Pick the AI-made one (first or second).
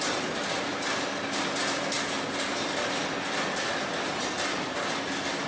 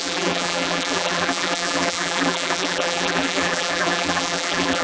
second